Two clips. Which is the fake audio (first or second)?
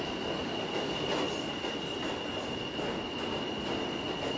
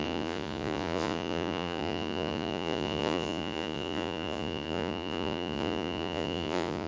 second